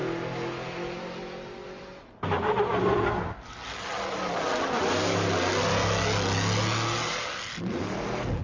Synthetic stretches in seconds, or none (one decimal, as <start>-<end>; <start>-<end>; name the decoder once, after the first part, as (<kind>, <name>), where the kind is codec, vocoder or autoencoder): none

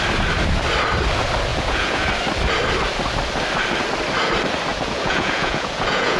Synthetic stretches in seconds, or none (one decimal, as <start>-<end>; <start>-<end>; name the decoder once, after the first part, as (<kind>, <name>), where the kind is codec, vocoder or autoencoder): 1.5-2.1 (vocoder, Vocos); 4.7-6.2

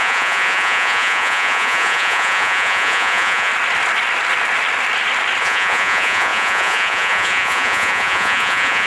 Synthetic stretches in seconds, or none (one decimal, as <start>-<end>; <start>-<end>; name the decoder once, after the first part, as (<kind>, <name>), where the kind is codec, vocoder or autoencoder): 0.0-3.5 (vocoder, Vocos); 5.4-8.9